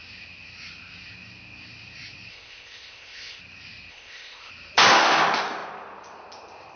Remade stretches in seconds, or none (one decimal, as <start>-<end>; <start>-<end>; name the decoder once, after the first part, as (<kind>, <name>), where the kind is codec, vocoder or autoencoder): 2.3-3.4 (codec, ZipCodec); 3.9-4.5